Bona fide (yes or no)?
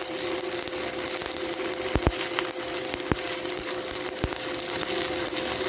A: yes